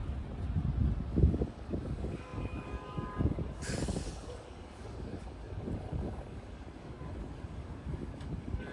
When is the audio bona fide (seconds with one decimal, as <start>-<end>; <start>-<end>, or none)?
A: 0.0-1.1